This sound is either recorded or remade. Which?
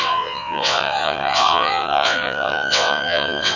remade